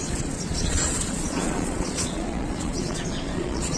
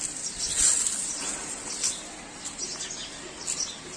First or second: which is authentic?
second